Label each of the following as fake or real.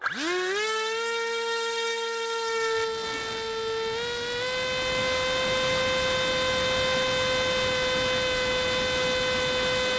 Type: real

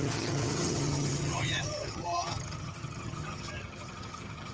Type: fake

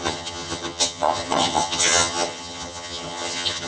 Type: fake